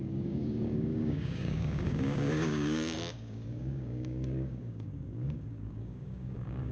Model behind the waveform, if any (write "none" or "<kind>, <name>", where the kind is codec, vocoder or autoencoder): codec, DAC